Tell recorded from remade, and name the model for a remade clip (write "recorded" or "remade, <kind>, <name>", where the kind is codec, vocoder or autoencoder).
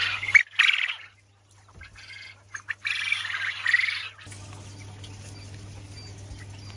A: recorded